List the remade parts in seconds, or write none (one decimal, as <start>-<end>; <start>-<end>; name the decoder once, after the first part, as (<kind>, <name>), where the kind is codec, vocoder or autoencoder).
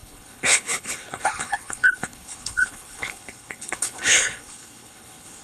0.0-5.4 (codec, HILCodec)